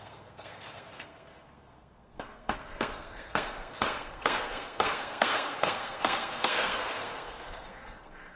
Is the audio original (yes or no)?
no